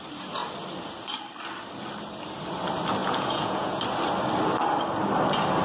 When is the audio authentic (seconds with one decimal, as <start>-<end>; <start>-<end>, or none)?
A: 0.0-3.0; 3.8-5.6